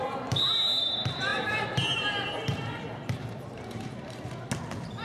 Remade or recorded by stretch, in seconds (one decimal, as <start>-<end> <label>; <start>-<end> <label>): 0.0-1.3 recorded; 1.3-4.3 remade; 4.3-5.0 recorded